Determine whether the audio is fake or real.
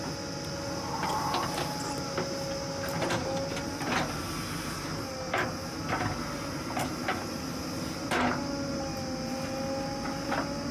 real